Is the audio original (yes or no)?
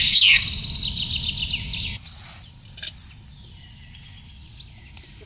yes